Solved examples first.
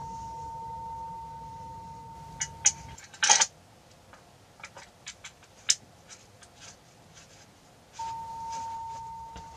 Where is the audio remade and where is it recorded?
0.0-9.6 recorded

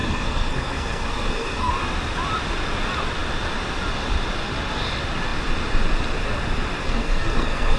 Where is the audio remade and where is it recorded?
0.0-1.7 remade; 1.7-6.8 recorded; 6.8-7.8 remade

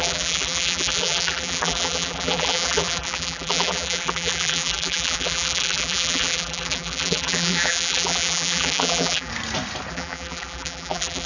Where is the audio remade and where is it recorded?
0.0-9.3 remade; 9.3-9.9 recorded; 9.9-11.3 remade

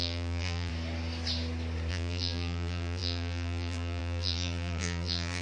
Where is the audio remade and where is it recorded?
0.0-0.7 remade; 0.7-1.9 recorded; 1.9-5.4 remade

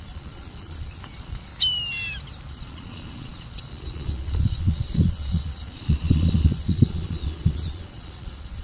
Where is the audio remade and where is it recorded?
0.0-1.5 remade; 1.5-2.5 recorded; 2.5-8.6 remade